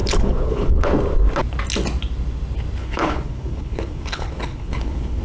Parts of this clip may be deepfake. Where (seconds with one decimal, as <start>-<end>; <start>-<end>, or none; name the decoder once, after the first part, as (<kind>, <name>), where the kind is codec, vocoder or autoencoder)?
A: 0.0-0.9 (codec, HILCodec); 2.8-5.2